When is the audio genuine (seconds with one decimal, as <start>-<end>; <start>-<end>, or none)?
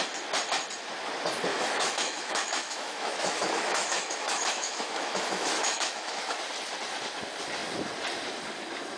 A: 0.0-1.5; 6.4-9.0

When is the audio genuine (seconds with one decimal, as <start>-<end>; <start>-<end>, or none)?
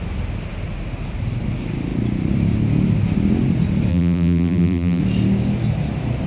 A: 0.0-3.9; 5.0-6.3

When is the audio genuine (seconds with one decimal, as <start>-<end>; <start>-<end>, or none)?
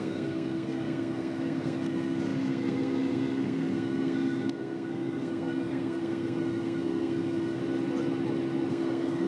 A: 7.6-8.7